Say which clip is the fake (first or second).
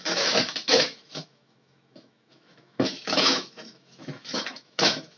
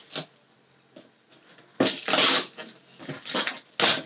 first